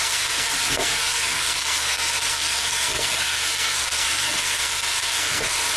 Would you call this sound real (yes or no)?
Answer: no